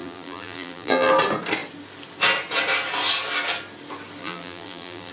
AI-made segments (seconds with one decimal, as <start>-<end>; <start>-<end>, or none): 0.0-1.1; 4.2-5.1